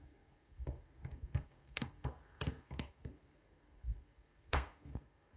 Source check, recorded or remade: remade